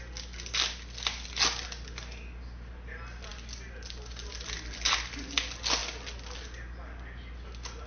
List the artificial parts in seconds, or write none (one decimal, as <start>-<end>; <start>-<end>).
none